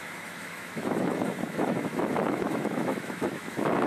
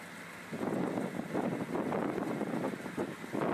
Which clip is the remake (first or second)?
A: first